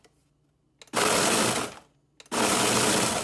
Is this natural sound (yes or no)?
yes